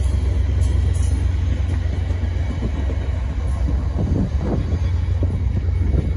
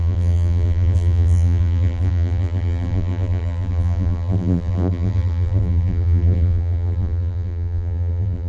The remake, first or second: second